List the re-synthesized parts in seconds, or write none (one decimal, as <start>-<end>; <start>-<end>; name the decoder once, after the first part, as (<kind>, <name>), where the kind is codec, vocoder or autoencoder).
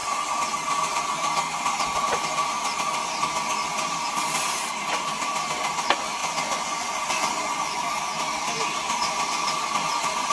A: 6.2-7.8 (vocoder, Vocos)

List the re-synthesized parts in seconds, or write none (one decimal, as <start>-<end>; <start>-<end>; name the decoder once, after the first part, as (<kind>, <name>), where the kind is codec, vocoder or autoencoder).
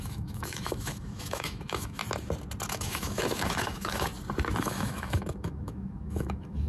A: 0.0-2.0 (autoencoder, DAC-VAE); 2.7-4.1; 4.6-6.7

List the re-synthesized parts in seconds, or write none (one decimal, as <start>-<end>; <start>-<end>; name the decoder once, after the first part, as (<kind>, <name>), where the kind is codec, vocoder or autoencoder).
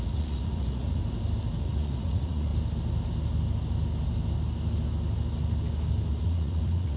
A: 0.0-1.0 (vocoder, Vocos); 1.6-2.5; 6.2-7.0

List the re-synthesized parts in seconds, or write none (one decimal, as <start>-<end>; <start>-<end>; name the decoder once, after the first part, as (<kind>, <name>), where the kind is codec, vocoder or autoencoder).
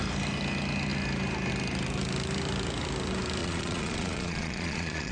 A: 3.4-5.1 (vocoder, Vocos)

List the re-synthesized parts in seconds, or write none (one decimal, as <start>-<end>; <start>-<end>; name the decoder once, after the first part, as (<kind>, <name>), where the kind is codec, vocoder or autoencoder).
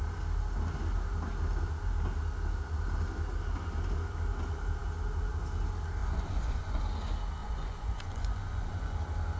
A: 6.0-6.8 (vocoder, Vocos); 7.4-9.0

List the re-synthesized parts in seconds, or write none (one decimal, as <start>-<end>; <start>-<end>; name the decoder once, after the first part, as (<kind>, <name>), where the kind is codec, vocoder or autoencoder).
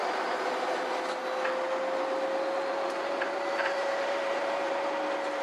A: 0.0-0.6 (vocoder, BigVGAN v2); 2.7-4.9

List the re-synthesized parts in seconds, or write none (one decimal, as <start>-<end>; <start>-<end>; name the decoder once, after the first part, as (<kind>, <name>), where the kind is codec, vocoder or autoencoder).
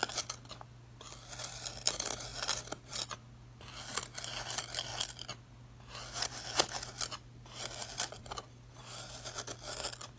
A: none